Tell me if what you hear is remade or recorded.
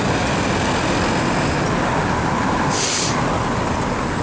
recorded